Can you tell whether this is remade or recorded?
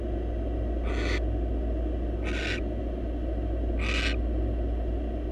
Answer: recorded